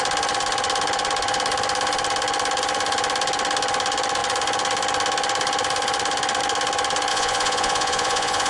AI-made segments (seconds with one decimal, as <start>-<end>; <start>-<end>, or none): 7.1-8.5